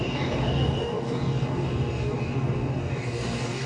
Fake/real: fake